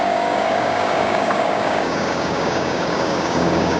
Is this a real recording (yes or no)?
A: no